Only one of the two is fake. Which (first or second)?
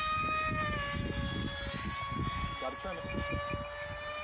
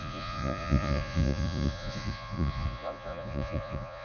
second